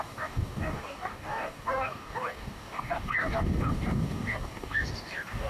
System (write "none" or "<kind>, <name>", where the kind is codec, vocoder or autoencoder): codec, DAC